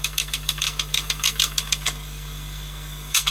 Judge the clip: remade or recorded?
remade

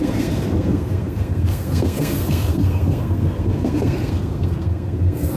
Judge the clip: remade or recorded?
remade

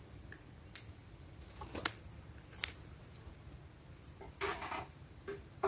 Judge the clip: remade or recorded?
recorded